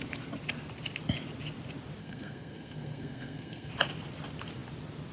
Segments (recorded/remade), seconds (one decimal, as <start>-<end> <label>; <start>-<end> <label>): 0.0-2.0 recorded; 2.0-3.7 remade; 3.7-5.1 recorded